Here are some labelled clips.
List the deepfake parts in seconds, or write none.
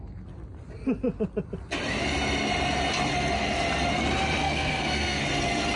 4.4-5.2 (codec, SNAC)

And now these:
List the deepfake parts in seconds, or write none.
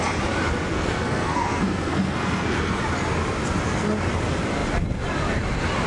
0.7-2.8 (codec, SNAC)